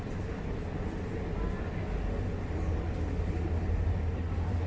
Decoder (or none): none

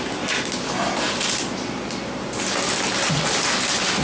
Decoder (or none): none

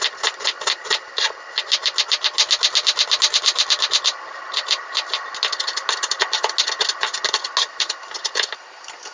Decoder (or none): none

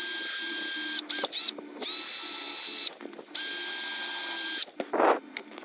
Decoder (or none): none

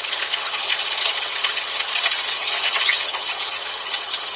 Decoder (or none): vocoder, HiFi-GAN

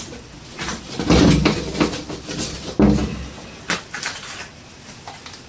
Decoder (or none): none